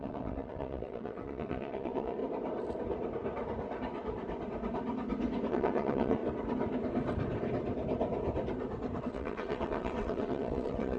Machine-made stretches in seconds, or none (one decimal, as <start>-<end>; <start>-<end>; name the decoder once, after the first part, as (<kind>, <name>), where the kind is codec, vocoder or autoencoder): 0.0-2.2 (vocoder, WaveNeXt); 5.5-6.2; 9.0-11.0